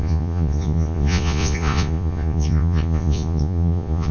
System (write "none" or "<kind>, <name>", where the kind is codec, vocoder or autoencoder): vocoder, Vocos